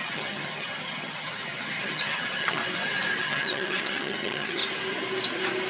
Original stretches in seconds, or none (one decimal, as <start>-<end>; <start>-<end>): 2.6-3.2; 4.6-5.7